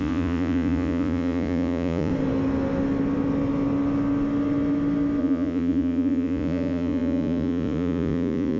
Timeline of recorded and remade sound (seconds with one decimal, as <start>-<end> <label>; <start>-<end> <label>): 0.0-2.1 remade; 2.1-5.2 recorded; 5.2-8.6 remade